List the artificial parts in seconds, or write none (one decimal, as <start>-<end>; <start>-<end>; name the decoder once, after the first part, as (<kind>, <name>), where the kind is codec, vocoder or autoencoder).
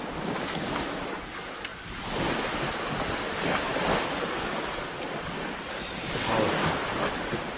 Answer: none